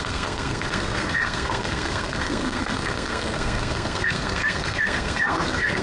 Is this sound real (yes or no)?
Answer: no